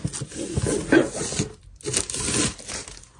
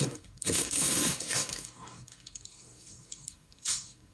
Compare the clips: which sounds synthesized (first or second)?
second